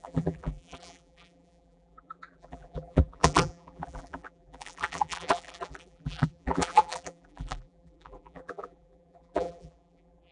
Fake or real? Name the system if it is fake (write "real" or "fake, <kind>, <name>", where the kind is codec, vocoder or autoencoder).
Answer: fake, vocoder, BigVGAN v2